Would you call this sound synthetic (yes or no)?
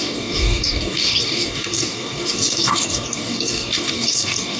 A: yes